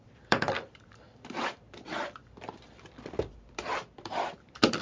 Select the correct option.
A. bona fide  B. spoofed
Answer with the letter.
B